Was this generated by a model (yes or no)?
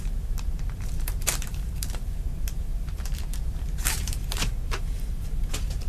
yes